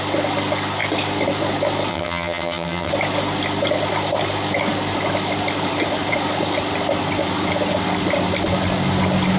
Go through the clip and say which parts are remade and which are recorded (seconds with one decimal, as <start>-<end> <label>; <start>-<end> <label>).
0.0-1.9 recorded; 1.9-2.9 remade; 2.9-9.4 recorded